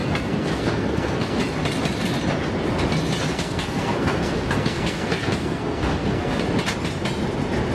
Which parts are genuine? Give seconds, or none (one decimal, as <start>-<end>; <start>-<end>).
1.4-3.3; 6.4-7.7

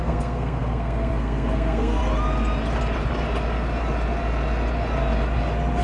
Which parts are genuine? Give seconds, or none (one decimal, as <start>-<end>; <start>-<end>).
2.0-5.8

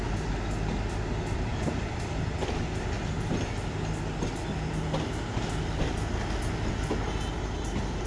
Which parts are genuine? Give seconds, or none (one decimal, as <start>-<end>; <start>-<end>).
0.0-8.1

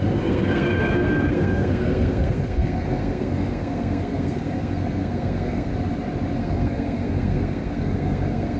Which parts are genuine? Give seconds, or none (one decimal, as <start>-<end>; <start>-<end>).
5.7-6.4

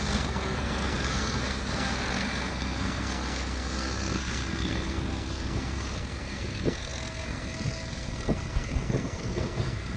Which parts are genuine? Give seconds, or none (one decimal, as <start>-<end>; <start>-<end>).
none

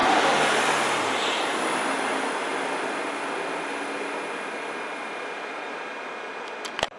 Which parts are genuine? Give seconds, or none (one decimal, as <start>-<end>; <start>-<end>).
0.0-7.0